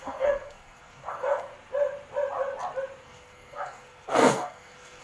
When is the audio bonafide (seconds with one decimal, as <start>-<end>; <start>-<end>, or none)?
1.5-3.0